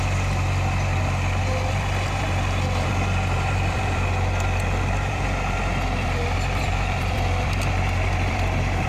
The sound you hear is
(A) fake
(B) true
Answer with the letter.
A